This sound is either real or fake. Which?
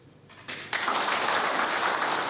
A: real